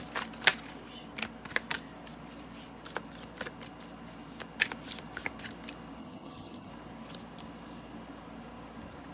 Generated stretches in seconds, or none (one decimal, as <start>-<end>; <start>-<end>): 6.0-6.7